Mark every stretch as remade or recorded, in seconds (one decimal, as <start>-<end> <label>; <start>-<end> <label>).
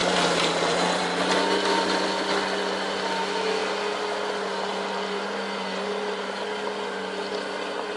0.0-1.2 remade; 1.2-8.0 recorded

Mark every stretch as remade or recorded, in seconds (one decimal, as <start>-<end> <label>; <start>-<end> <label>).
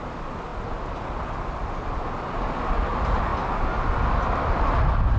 0.0-5.2 recorded